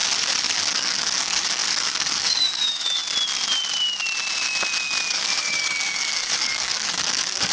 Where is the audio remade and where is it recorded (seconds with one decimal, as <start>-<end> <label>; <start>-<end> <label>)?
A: 0.0-0.7 recorded; 0.7-3.0 remade; 3.0-5.1 recorded; 5.1-7.5 remade

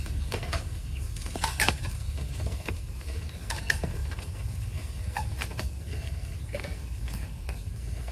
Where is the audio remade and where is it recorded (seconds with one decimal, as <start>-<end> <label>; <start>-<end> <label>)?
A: 0.0-8.1 remade

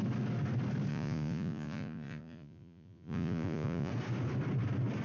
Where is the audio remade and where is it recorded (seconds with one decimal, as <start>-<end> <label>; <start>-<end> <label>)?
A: 0.0-0.9 recorded; 0.9-3.9 remade; 3.9-5.0 recorded

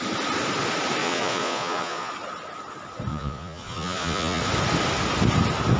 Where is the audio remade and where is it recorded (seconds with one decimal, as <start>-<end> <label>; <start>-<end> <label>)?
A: 0.0-1.0 recorded; 1.0-2.1 remade; 2.1-3.1 recorded; 3.1-4.4 remade; 4.4-5.8 recorded